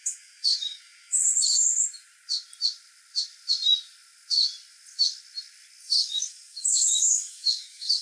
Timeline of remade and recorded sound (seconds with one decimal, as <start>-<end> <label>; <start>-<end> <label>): 0.0-1.2 remade; 1.2-5.8 recorded; 5.8-8.0 remade